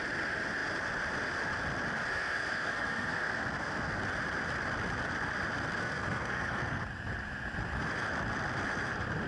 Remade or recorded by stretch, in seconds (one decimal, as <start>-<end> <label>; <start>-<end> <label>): 0.0-2.1 recorded; 2.1-4.0 remade; 4.0-5.8 recorded; 5.8-6.8 remade; 6.8-9.3 recorded